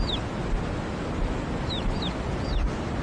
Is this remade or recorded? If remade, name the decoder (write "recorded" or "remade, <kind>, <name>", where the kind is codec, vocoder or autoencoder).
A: recorded